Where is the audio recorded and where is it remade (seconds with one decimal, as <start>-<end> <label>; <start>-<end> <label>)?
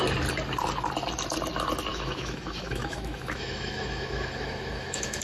0.0-1.9 recorded; 1.9-5.2 remade